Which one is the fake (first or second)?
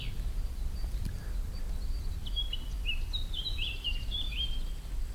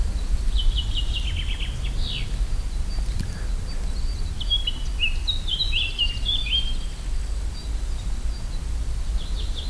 first